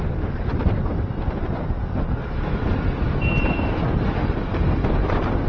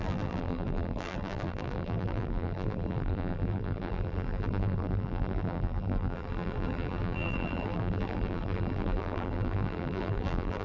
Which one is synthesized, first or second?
second